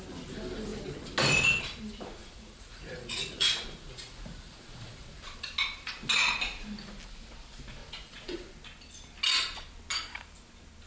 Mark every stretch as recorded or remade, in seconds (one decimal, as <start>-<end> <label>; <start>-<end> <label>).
0.0-2.2 recorded; 2.2-5.2 remade; 5.2-7.8 recorded; 7.8-8.5 remade; 8.5-10.9 recorded